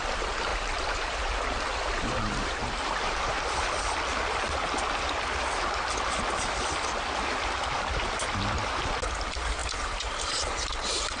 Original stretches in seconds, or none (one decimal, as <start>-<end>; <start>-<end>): 0.0-0.5; 3.8-9.6